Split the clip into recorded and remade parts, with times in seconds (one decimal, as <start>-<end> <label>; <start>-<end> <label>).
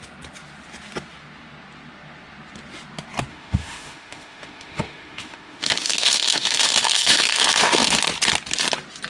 0.0-3.3 recorded; 3.3-8.0 remade; 8.0-9.1 recorded